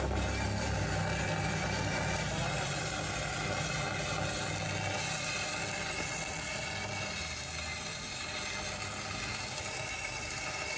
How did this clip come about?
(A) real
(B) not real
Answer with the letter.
A